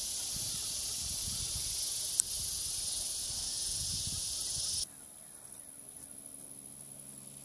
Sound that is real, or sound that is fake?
real